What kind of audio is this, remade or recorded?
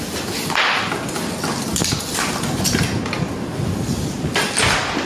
recorded